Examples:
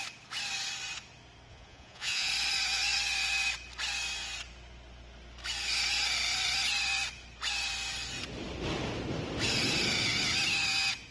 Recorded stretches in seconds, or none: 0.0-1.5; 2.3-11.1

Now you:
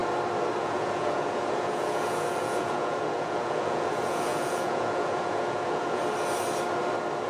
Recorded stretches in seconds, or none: 0.0-0.6; 6.0-7.3

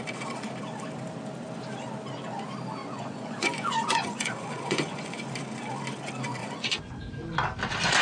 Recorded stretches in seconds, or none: 0.0-2.8; 5.3-6.4; 7.0-8.0

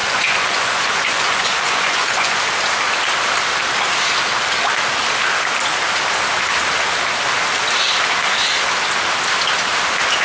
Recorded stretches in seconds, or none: 2.4-10.2

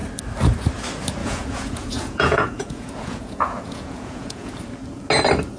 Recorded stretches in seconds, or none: 0.0-1.2; 4.5-5.6

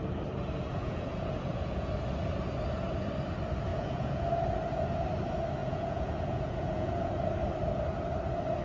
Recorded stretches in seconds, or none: 0.0-0.7; 1.9-3.7; 4.3-5.6; 7.1-8.6

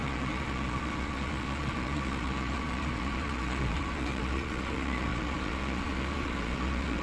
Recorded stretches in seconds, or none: none

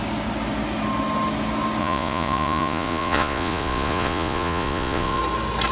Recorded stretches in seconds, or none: 0.0-1.8; 5.2-5.7